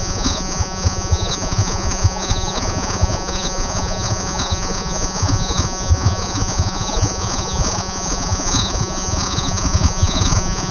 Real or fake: fake